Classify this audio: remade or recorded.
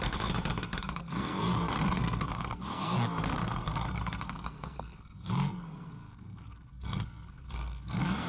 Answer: remade